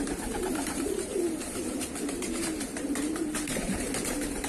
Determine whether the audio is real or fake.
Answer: fake